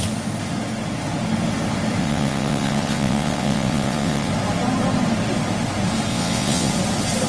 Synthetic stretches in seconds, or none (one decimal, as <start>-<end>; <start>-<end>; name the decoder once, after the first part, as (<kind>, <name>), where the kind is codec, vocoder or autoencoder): 2.0-4.3 (vocoder, WaveNeXt); 6.1-6.7